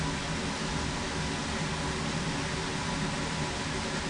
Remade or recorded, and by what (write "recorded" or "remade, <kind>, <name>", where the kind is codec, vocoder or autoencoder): recorded